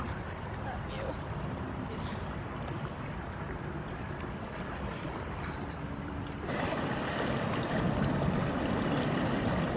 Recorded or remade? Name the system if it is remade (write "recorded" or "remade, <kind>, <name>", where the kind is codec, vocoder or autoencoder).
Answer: remade, vocoder, BigVGAN v2